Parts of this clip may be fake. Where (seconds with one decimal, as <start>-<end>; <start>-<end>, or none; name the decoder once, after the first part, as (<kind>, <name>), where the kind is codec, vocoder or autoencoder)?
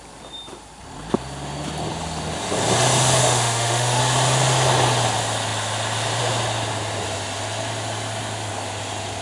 3.2-4.0 (autoencoder, DAC-VAE)